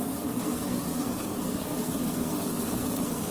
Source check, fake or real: fake